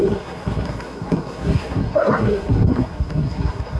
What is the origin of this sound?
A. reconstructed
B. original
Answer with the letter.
A